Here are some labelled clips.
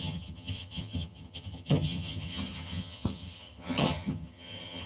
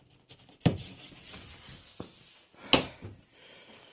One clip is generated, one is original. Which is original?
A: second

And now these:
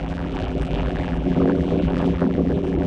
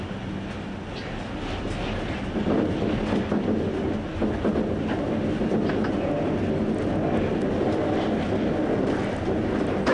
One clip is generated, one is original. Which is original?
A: second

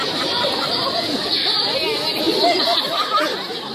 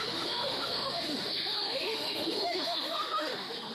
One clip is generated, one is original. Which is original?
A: first